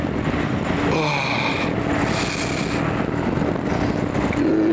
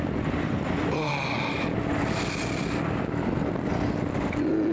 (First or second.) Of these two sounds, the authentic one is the first